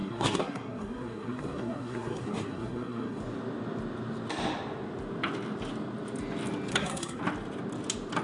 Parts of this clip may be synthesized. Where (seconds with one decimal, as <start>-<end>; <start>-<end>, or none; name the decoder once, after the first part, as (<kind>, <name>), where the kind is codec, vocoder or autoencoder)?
0.0-3.2 (codec, SNAC); 6.7-7.2

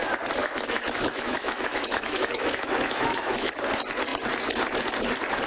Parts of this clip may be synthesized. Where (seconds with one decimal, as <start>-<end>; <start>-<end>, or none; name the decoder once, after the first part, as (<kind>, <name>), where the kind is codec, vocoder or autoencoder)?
0.4-3.5 (autoencoder, DAC-VAE)

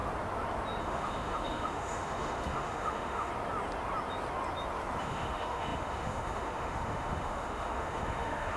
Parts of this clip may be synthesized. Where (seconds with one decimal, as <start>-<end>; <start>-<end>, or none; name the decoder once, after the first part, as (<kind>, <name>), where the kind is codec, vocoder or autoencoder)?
0.8-3.3 (autoencoder, DAC-VAE); 5.0-8.6

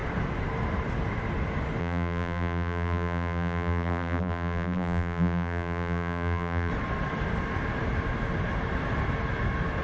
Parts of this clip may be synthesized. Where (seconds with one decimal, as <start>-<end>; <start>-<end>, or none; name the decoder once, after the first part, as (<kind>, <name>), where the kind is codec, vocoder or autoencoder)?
1.8-6.7 (vocoder, BigVGAN v2)